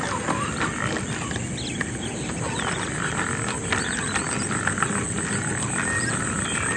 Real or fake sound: real